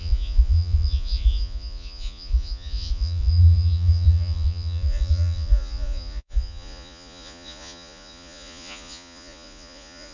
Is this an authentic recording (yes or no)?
no